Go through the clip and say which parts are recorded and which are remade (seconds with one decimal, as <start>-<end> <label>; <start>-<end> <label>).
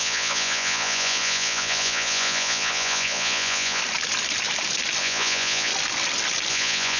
0.0-3.8 remade; 3.8-5.0 recorded; 5.0-5.7 remade; 5.7-6.5 recorded; 6.5-7.0 remade